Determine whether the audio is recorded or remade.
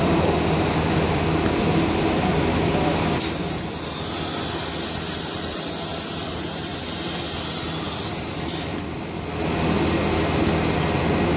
recorded